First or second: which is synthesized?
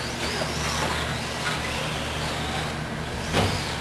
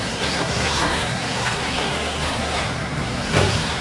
second